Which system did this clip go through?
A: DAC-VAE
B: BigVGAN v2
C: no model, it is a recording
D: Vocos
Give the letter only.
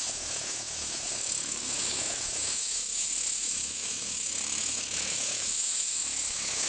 A